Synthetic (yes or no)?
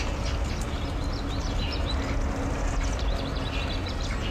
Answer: no